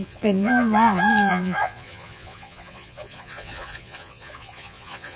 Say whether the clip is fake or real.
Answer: fake